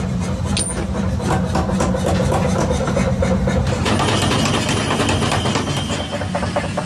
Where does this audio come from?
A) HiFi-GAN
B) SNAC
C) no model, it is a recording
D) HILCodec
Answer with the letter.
C